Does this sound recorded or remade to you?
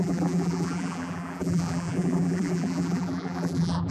remade